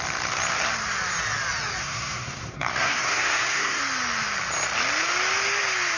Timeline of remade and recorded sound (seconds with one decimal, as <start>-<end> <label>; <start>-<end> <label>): 0.0-1.8 recorded; 1.8-3.8 remade; 3.8-6.0 recorded